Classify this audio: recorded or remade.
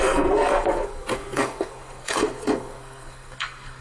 remade